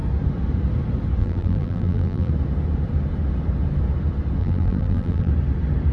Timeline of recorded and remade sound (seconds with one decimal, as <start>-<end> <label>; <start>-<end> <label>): 0.0-1.2 recorded; 1.2-2.3 remade; 2.3-4.4 recorded; 4.4-5.3 remade; 5.3-5.9 recorded